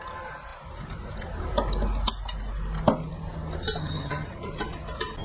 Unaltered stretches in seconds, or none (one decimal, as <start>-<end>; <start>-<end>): 0.0-3.8; 4.5-5.2